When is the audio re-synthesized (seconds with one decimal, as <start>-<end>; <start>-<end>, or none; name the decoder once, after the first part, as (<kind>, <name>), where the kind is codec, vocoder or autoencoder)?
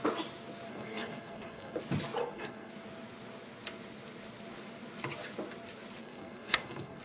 0.7-1.8 (codec, SNAC); 2.2-2.7; 6.0-7.0